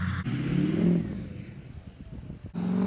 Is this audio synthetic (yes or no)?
no